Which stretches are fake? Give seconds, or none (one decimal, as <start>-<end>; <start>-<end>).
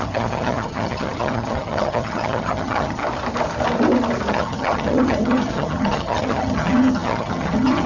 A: 0.0-3.0; 4.3-7.9